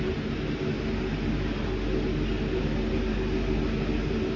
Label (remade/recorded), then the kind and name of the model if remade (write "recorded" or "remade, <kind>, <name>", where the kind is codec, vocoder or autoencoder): recorded